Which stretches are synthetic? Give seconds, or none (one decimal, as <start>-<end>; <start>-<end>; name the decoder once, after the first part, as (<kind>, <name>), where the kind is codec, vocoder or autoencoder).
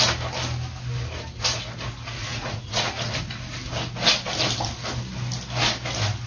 2.2-3.1 (vocoder, Vocos)